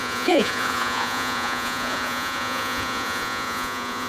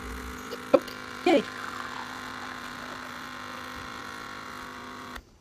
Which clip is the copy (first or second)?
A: first